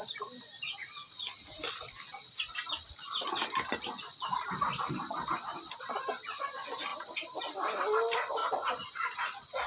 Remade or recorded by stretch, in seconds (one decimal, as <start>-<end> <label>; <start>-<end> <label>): 0.0-8.4 remade; 8.4-9.0 recorded; 9.0-9.7 remade